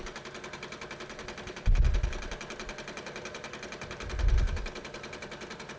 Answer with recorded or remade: recorded